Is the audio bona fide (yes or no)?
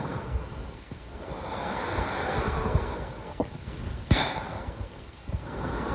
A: no